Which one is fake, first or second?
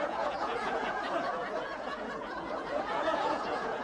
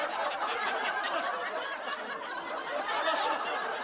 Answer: first